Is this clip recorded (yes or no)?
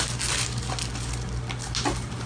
yes